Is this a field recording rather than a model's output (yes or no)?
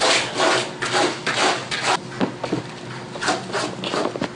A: yes